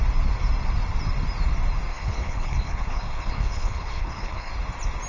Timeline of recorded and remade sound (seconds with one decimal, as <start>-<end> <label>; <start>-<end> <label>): 0.0-1.9 recorded; 1.9-4.5 remade; 4.5-5.1 recorded

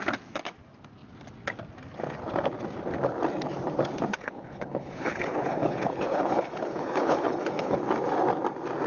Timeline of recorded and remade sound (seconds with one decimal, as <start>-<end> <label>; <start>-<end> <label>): 0.0-4.1 recorded; 4.1-7.8 remade; 7.8-8.9 recorded

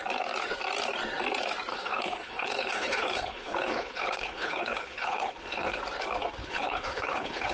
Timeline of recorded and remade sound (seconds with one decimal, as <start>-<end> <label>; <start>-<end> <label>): 0.0-1.7 recorded; 1.7-5.8 remade; 5.8-6.4 recorded; 6.4-7.5 remade

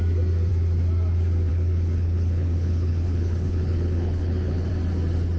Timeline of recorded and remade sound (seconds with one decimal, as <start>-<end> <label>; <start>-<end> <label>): 0.0-1.5 recorded; 1.5-4.7 remade; 4.7-5.4 recorded

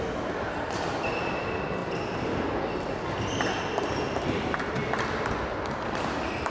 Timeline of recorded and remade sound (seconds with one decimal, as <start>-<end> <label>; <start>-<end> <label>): 0.0-6.5 recorded

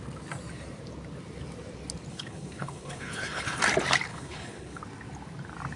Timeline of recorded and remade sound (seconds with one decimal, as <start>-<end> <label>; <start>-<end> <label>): 0.0-2.1 recorded; 2.1-3.6 remade; 3.6-4.1 recorded; 4.1-4.8 remade; 4.8-5.8 recorded

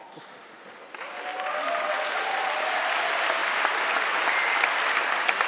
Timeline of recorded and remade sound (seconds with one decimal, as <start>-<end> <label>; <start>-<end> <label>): 0.0-5.5 recorded